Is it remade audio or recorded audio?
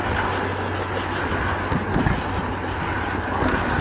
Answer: recorded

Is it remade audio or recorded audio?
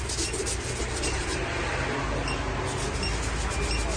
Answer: recorded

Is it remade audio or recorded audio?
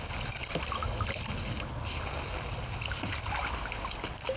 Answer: recorded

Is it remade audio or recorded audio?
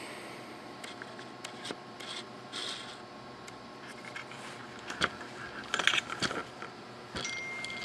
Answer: recorded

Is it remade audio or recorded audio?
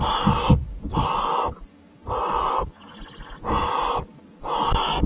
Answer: recorded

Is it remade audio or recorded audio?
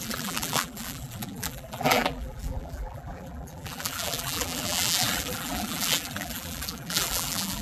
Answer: remade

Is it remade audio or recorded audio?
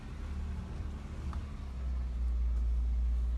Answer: recorded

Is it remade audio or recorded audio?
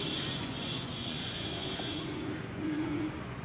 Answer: remade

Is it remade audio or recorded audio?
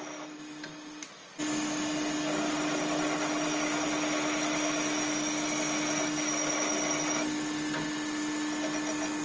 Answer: recorded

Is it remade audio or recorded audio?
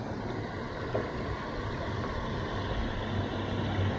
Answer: recorded